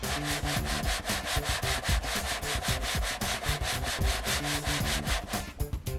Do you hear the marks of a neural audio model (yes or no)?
no